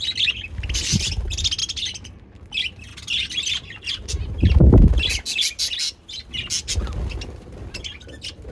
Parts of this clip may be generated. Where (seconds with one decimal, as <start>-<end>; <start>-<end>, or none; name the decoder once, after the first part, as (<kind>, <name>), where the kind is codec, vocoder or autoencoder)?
none